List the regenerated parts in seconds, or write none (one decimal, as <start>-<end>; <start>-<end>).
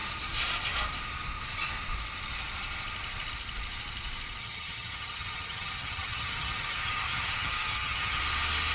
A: 4.4-8.2